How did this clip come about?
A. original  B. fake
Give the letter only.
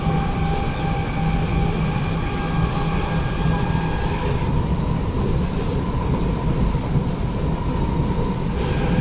A